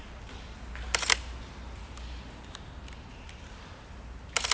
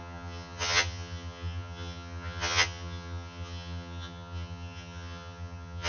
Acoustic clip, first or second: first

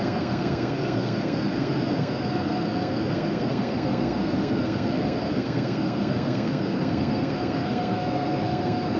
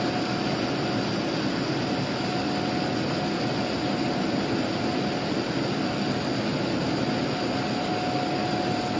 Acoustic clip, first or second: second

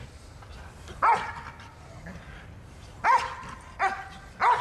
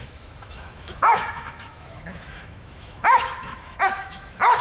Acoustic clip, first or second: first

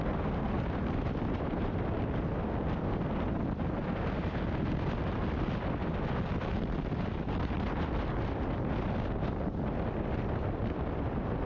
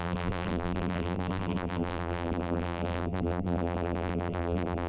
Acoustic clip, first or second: first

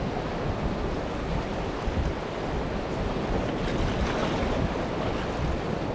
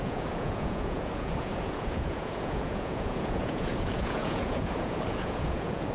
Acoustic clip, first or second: first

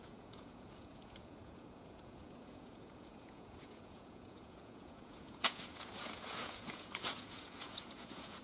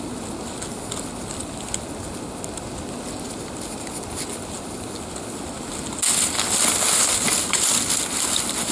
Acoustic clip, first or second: second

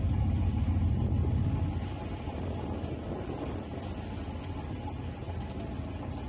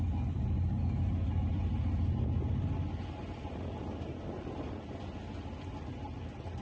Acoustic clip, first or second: second